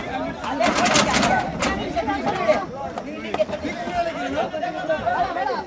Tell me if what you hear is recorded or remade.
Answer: recorded